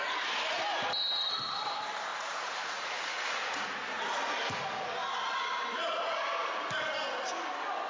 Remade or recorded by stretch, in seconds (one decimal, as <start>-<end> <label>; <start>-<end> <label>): 0.0-2.1 recorded; 2.1-4.0 remade; 4.0-7.9 recorded